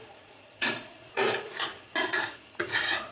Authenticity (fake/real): fake